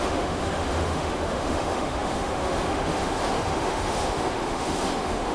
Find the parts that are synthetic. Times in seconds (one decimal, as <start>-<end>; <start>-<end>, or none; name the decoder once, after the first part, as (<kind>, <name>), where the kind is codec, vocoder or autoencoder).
0.0-5.3 (autoencoder, DAC-VAE)